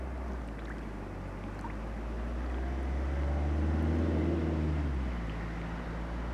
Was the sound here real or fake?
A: real